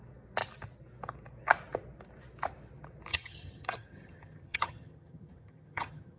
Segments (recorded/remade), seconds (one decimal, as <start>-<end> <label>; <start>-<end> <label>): 0.0-3.1 recorded; 3.1-6.2 remade